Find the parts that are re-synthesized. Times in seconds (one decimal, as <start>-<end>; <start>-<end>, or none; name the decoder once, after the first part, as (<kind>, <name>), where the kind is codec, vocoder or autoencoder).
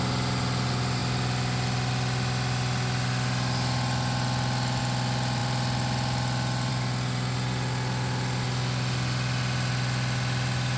none